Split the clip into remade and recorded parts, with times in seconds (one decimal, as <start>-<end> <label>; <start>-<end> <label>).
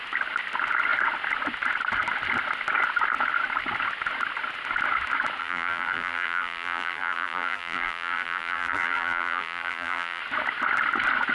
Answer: 0.0-5.4 recorded; 5.4-10.2 remade; 10.2-11.3 recorded